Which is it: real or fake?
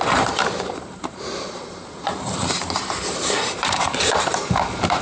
fake